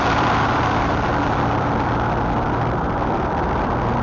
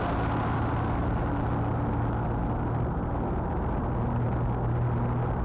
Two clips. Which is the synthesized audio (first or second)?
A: first